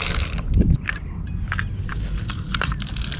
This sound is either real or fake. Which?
real